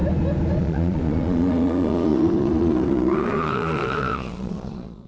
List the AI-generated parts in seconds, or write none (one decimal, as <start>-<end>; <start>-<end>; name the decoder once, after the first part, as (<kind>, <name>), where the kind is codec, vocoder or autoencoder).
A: 0.6-5.1 (vocoder, Vocos)